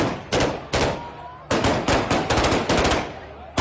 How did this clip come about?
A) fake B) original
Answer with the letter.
B